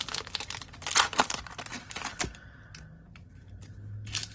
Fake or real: real